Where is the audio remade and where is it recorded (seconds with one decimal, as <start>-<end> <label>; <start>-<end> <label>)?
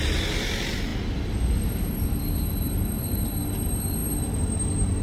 0.0-5.0 recorded